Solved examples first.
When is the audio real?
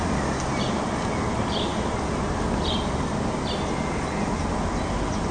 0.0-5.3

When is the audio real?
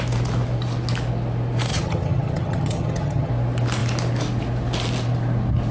0.0-1.7; 3.3-5.7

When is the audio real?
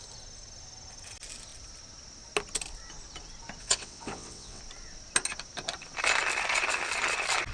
0.0-3.6; 4.6-7.5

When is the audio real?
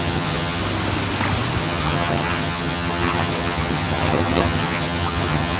0.6-1.6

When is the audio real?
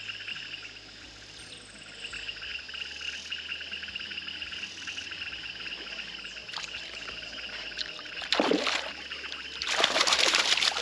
0.0-10.8